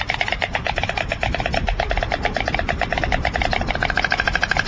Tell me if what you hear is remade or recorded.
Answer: recorded